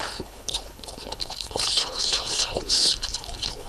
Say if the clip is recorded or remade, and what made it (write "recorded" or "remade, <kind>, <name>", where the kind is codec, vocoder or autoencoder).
remade, codec, HILCodec